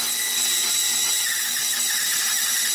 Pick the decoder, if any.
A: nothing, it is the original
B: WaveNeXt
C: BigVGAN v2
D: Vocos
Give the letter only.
A